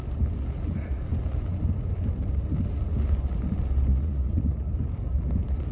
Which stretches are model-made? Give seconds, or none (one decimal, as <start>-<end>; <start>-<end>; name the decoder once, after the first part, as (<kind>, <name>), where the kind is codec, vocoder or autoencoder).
3.9-4.7 (vocoder, Vocos)